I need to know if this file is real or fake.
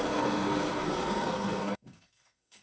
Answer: fake